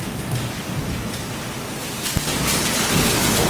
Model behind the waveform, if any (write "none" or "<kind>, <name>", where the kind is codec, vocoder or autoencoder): vocoder, BigVGAN v2